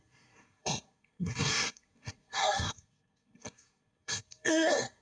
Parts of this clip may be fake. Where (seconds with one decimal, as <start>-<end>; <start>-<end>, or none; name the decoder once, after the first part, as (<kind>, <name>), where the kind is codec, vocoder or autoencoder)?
0.0-5.0 (codec, SNAC)